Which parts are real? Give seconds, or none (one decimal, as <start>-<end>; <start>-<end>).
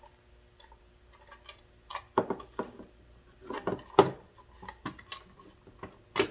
0.0-6.3